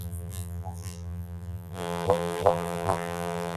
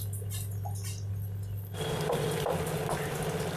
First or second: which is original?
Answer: second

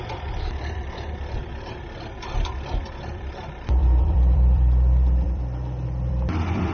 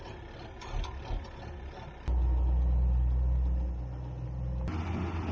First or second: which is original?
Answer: second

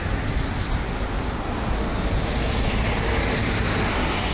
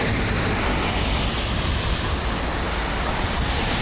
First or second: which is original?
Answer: first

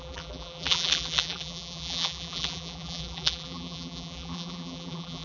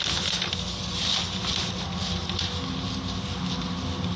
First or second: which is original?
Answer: second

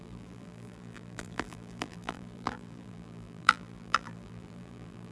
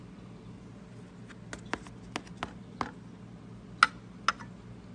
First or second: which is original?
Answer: second